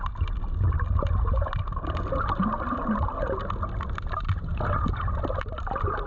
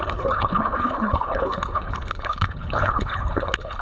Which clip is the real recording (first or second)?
first